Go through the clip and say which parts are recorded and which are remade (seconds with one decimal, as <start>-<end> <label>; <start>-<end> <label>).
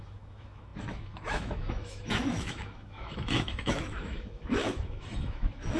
0.0-5.8 remade